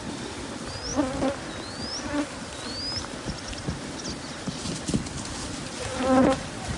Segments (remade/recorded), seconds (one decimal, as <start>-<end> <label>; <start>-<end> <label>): 0.0-6.8 recorded

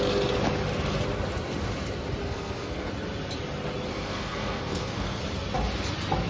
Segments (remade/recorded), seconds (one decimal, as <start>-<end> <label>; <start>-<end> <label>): 0.0-2.2 recorded; 2.2-2.9 remade; 2.9-3.9 recorded; 3.9-5.2 remade; 5.2-6.3 recorded